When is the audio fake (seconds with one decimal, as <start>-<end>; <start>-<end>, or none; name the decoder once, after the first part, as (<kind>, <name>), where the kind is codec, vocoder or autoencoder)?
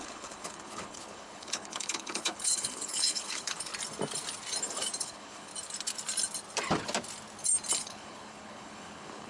0.0-3.7 (codec, HILCodec); 5.0-5.5; 7.8-9.3